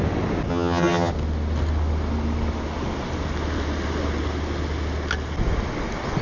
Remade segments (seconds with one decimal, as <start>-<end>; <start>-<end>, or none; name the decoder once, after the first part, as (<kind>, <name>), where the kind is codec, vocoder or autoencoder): 0.5-1.1 (vocoder, HiFi-GAN)